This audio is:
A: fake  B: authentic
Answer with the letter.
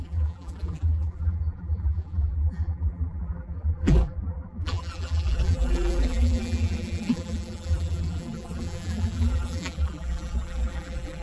A